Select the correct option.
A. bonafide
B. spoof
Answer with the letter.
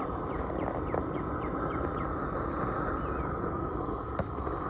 A